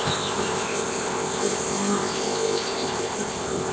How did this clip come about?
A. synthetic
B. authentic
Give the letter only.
A